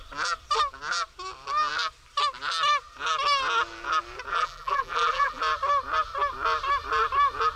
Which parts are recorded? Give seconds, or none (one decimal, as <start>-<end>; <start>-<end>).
0.0-4.3; 5.4-7.6